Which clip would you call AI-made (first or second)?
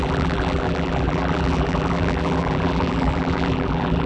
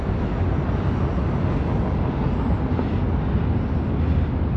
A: first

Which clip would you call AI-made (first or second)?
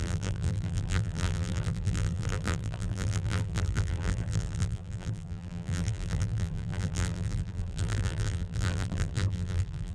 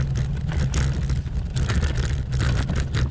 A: first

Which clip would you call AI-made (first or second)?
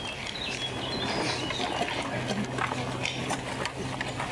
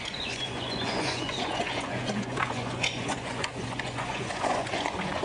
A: second